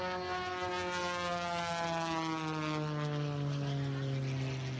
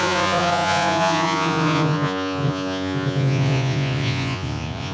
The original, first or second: first